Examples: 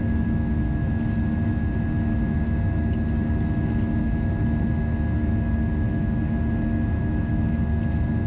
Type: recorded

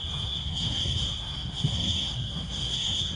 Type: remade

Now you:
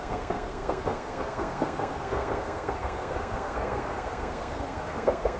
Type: remade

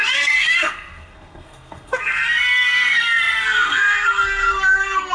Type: remade